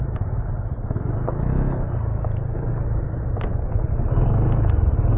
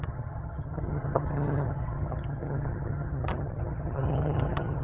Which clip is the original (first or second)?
first